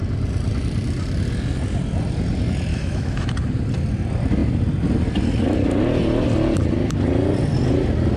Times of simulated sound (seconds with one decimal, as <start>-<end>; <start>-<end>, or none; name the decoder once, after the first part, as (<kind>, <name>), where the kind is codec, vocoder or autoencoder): 2.7-3.3 (autoencoder, DAC-VAE)

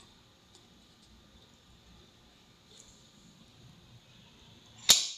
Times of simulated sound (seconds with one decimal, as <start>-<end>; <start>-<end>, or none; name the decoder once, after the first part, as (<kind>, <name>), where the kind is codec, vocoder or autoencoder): none

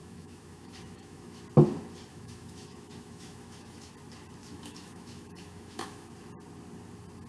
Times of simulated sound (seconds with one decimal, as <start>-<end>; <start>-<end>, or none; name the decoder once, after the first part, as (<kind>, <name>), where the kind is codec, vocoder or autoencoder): 0.0-1.4 (autoencoder, DAC-VAE); 2.1-3.9; 4.4-6.1